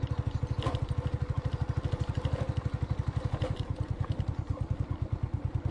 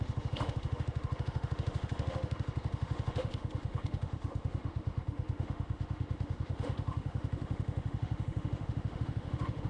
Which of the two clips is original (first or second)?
first